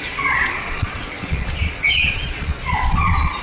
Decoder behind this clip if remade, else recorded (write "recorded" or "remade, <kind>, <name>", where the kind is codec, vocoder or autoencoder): remade, vocoder, Vocos